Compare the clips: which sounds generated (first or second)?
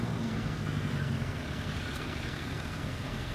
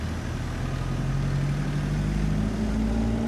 first